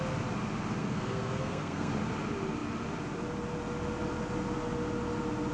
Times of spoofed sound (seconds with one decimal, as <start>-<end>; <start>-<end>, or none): 0.8-1.9